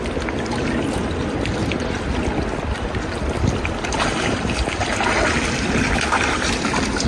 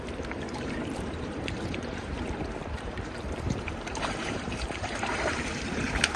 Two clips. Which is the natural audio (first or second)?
first